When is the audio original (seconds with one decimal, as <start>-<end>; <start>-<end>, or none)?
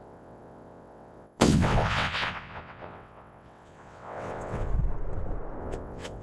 4.7-5.6